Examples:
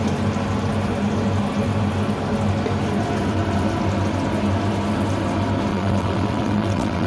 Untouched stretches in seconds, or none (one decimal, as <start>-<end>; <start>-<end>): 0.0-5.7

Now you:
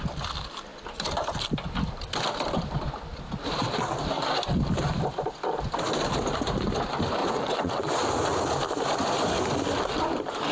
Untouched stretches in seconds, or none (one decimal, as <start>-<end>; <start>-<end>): 0.0-7.2; 7.9-10.5

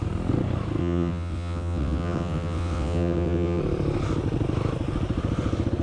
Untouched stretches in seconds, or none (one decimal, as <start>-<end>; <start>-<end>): 0.0-0.8; 3.6-5.8